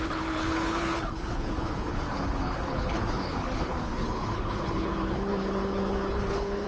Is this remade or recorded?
remade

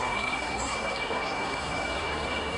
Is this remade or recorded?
remade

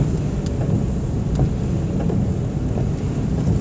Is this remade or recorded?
recorded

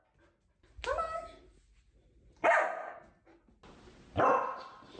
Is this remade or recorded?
recorded